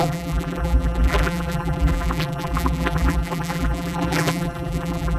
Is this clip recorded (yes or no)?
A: no